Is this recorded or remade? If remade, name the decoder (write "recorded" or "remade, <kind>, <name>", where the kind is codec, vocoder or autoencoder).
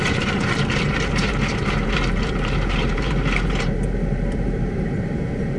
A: remade, vocoder, BigVGAN v2